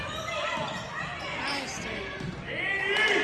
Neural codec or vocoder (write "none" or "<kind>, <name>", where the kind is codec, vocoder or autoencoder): none